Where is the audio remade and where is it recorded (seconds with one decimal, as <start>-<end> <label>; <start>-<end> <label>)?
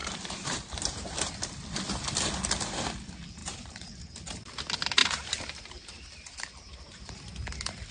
0.0-1.3 remade; 1.3-3.4 recorded; 3.4-4.0 remade; 4.0-5.0 recorded; 5.0-7.1 remade; 7.1-7.9 recorded